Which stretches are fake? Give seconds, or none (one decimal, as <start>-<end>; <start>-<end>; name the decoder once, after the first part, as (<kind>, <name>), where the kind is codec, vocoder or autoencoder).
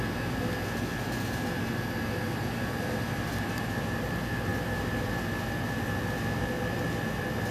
none